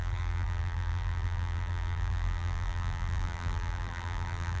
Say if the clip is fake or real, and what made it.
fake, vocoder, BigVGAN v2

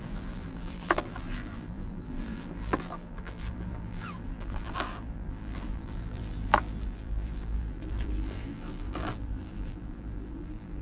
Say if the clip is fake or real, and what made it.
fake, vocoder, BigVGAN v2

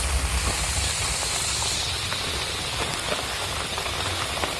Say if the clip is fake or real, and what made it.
real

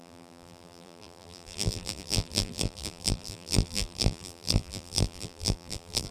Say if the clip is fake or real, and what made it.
fake, vocoder, BigVGAN v2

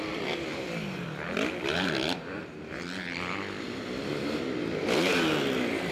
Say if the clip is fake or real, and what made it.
real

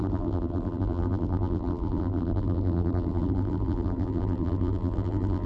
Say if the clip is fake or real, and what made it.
fake, vocoder, BigVGAN v2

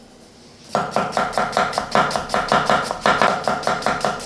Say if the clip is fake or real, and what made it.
real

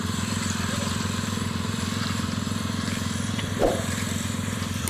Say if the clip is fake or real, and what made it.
fake, vocoder, BigVGAN v2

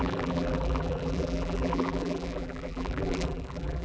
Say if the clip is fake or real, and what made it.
fake, vocoder, BigVGAN v2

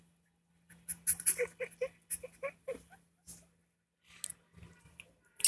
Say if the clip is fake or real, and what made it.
real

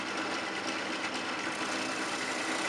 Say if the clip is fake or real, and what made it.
real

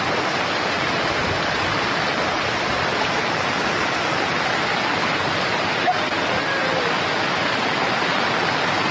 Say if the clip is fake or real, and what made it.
real